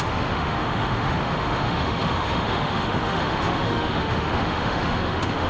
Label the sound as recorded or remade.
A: remade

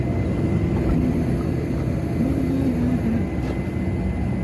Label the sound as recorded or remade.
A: recorded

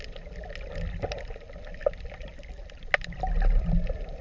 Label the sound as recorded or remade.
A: recorded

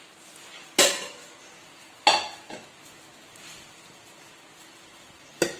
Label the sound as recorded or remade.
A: recorded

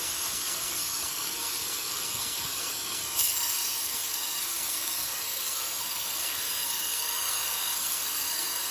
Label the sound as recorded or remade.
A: remade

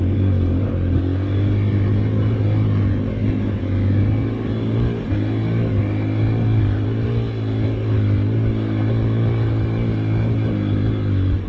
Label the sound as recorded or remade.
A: recorded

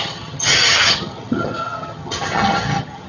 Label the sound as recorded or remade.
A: remade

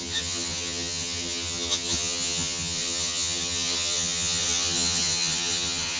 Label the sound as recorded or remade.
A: remade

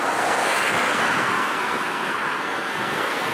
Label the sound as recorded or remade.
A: remade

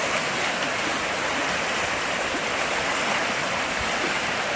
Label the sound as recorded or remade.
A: recorded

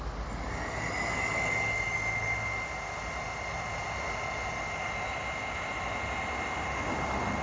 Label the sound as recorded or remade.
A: recorded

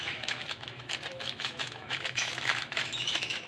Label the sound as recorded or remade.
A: remade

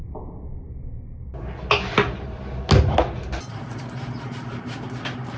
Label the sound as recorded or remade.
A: recorded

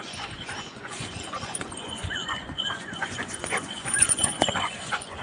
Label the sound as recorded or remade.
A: remade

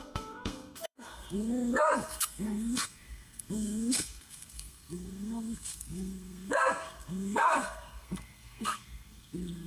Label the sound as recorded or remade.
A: remade